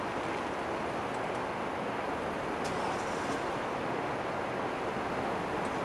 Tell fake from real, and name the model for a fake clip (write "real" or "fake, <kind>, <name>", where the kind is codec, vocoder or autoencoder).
real